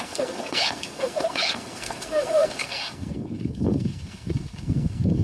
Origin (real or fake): fake